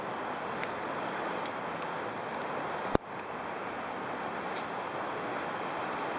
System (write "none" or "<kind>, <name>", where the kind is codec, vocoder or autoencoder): none